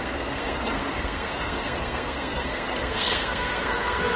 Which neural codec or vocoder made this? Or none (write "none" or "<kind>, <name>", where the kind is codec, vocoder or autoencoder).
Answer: codec, SNAC